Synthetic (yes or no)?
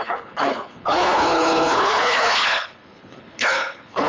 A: yes